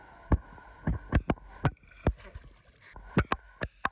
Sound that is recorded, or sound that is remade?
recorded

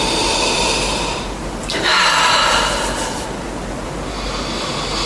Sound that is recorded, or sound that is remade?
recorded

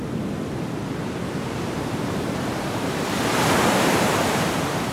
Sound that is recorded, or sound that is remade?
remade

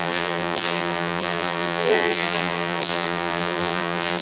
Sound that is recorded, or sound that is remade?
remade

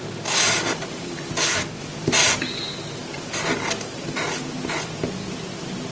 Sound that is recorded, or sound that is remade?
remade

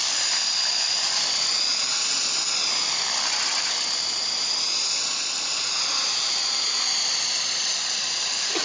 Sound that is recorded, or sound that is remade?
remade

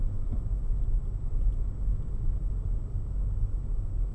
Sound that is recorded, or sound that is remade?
recorded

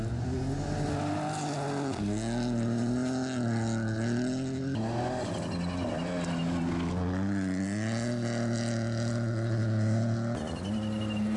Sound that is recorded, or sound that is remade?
recorded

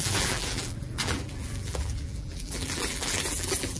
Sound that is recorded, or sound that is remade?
remade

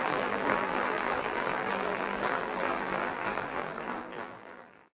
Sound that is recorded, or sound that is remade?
remade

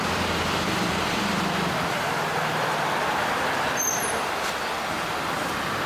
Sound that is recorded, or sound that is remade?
remade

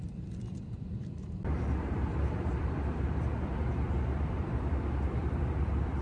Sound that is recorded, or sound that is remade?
remade